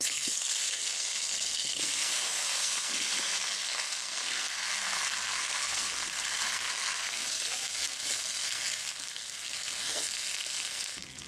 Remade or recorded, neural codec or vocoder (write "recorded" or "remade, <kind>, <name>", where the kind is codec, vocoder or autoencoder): remade, codec, SNAC